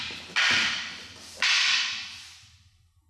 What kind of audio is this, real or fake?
real